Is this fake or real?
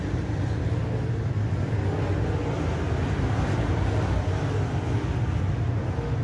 real